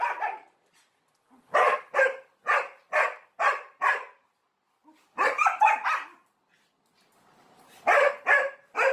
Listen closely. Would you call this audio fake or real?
real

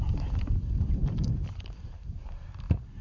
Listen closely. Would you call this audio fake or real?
fake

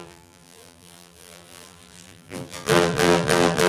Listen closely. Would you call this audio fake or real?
fake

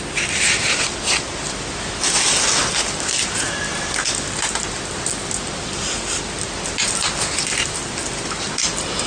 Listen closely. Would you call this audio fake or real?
real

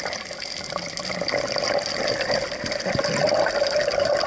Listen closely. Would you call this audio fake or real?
real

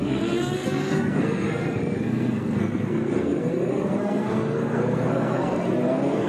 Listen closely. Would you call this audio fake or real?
fake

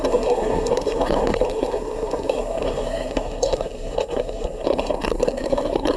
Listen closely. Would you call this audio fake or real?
fake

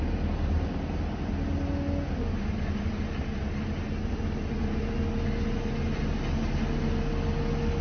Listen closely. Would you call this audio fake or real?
real